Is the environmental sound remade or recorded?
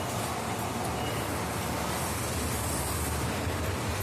recorded